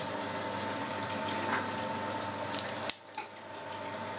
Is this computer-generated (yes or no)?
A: no